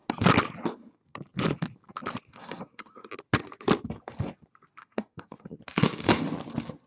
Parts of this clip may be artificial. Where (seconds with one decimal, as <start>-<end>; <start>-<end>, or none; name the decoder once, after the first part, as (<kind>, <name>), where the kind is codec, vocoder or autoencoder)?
2.3-3.1 (codec, SNAC); 4.8-5.6